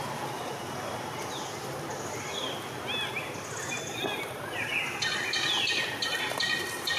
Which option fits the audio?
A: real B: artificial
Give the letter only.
A